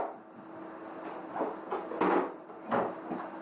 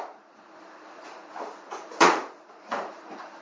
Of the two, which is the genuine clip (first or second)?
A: first